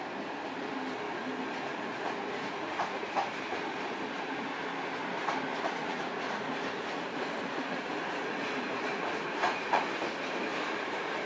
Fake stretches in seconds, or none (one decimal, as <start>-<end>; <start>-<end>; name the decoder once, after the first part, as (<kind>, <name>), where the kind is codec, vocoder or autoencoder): 1.7-3.3 (vocoder, Vocos); 5.5-9.8; 10.5-11.3